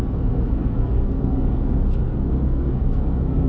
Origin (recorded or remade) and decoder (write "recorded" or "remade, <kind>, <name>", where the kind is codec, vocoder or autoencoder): remade, codec, SNAC